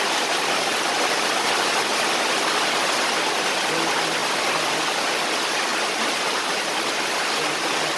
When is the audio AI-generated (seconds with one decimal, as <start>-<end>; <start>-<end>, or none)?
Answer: none